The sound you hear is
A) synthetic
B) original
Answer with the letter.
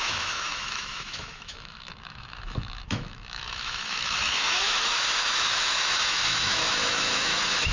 A